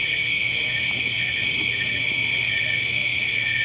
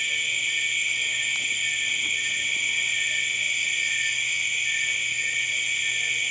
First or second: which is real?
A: second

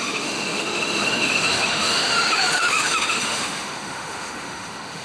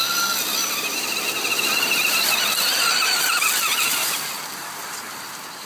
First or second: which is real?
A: second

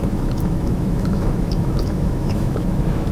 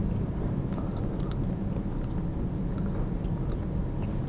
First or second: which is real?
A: second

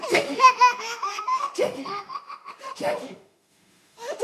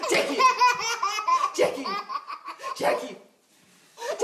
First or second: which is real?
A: second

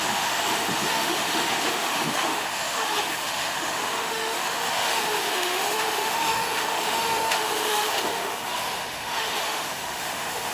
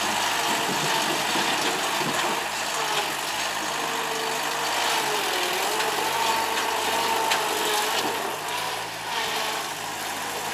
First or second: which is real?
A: second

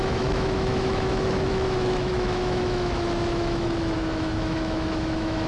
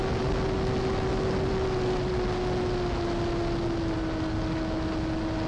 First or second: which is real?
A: second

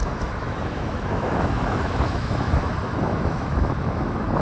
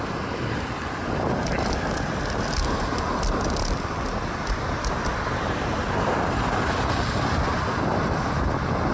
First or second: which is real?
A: second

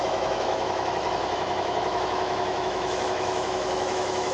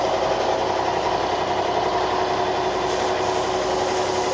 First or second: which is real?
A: second